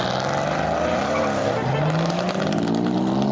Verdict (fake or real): real